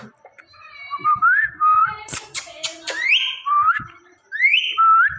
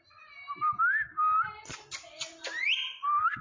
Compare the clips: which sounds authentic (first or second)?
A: second